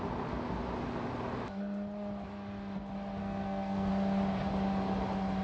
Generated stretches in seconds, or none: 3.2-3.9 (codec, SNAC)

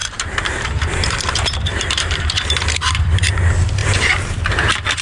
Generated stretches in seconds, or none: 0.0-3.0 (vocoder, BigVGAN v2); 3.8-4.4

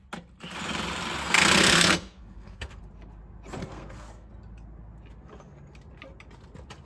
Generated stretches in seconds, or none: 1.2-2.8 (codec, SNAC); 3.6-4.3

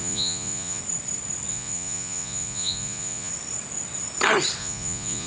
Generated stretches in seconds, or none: 0.0-0.8 (vocoder, Vocos); 1.5-3.3; 4.6-5.3

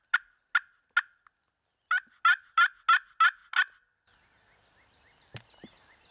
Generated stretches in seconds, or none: none

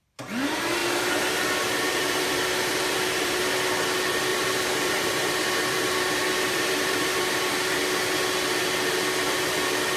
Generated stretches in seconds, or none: 0.8-3.7 (vocoder, BigVGAN v2); 4.3-7.8

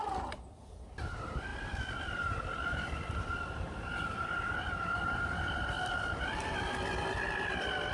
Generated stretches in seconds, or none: none